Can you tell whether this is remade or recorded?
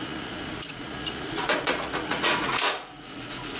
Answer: remade